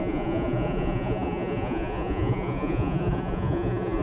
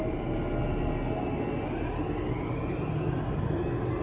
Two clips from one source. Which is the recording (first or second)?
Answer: second